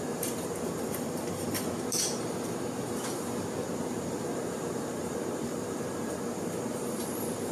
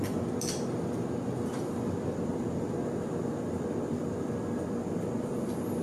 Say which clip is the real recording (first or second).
second